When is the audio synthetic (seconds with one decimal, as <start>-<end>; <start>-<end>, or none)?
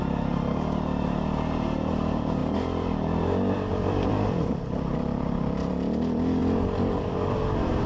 none